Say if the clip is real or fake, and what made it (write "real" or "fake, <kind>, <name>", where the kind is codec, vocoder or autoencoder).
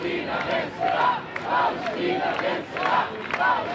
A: fake, vocoder, BigVGAN v2